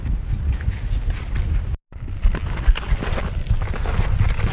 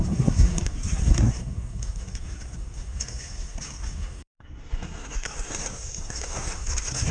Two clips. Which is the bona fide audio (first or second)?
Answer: first